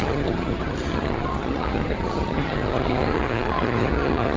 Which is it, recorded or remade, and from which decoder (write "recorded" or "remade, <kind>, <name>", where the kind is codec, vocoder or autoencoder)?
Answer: remade, vocoder, HiFi-GAN